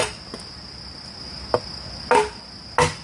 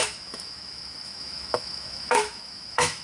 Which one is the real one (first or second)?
first